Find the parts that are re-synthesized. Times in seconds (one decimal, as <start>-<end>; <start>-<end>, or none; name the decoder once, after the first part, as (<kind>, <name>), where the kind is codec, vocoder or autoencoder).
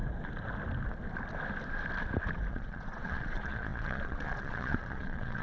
2.5-5.4 (vocoder, Vocos)